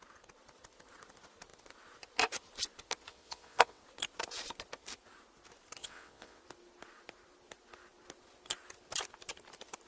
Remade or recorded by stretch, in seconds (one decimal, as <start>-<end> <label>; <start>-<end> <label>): 0.0-3.1 recorded; 3.1-3.8 remade; 3.8-5.8 recorded; 5.8-6.4 remade; 6.4-9.9 recorded